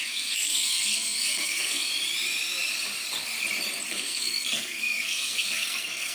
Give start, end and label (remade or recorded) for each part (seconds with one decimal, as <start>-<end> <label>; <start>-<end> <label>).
0.0-1.9 remade; 1.9-3.9 recorded; 3.9-6.1 remade